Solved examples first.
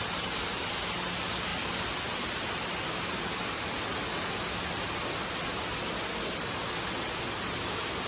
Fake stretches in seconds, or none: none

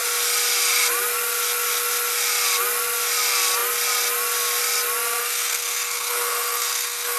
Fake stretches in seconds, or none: 5.2-7.2 (codec, SNAC)

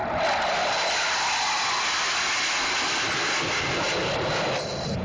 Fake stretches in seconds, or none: none